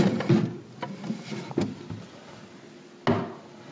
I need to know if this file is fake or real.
real